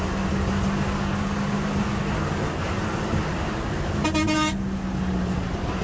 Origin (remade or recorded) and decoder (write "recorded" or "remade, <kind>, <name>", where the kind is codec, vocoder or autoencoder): recorded